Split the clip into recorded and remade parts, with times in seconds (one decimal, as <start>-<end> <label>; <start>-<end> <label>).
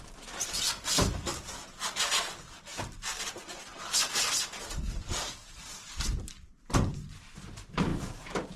0.0-1.3 remade; 1.3-2.1 recorded; 2.1-8.6 remade